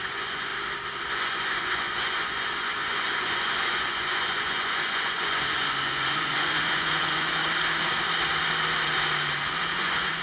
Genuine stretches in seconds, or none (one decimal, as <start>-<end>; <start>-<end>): 0.5-1.1; 7.4-9.7